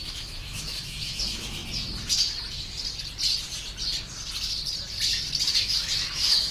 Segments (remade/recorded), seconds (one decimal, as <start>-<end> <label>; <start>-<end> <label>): 0.0-1.6 remade; 1.6-5.5 recorded; 5.5-6.5 remade